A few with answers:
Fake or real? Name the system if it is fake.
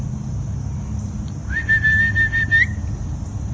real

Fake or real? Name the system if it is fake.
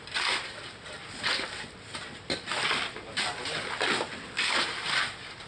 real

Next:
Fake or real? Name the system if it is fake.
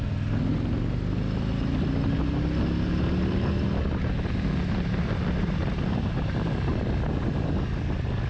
real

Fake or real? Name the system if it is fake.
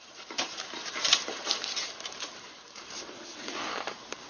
fake, vocoder, BigVGAN v2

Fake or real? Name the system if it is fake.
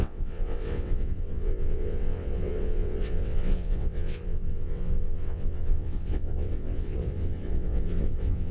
fake, vocoder, WaveNeXt